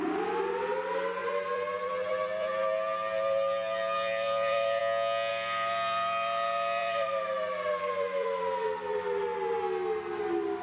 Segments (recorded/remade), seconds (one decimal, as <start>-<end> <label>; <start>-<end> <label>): 0.0-1.2 recorded; 1.2-4.8 remade; 4.8-5.3 recorded; 5.3-9.6 remade; 9.6-10.6 recorded